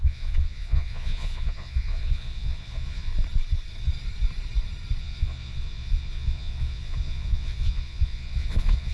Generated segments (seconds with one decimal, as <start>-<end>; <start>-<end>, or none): 0.0-3.1; 5.0-8.9